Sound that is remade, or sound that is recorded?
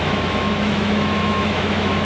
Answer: remade